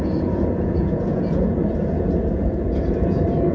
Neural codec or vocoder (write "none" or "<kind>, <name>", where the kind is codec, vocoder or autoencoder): vocoder, Vocos